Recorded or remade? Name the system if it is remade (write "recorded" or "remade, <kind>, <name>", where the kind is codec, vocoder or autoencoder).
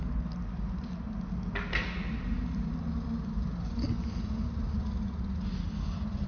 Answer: recorded